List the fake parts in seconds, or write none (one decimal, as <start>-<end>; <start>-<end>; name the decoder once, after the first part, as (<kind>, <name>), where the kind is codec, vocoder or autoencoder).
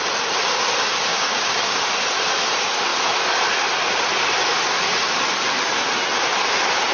1.1-1.8 (codec, DAC)